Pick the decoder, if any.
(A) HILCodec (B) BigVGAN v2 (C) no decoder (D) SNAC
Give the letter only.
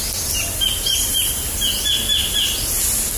C